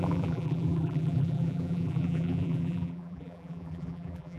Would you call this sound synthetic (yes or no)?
yes